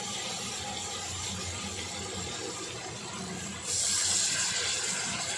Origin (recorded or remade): recorded